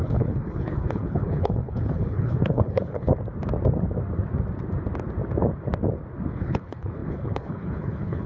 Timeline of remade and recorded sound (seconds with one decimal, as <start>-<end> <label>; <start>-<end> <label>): 0.0-3.1 remade; 3.1-6.3 recorded; 6.3-8.3 remade